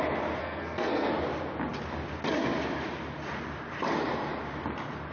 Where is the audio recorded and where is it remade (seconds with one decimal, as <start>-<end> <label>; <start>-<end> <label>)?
0.0-0.4 recorded; 0.4-1.1 remade; 1.1-5.1 recorded